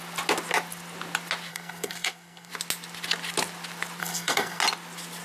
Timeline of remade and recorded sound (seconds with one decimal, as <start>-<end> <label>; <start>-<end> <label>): 0.0-1.5 recorded; 1.5-2.5 remade; 2.5-4.0 recorded; 4.0-4.6 remade; 4.6-5.2 recorded